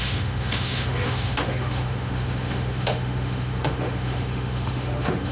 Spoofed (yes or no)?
yes